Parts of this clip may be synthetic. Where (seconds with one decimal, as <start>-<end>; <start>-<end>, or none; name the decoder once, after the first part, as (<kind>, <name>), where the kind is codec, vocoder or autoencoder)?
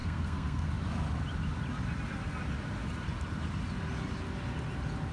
0.0-0.7 (codec, SNAC)